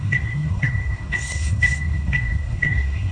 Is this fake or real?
fake